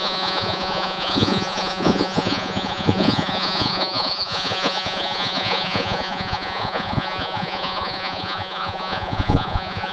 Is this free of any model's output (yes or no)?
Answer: no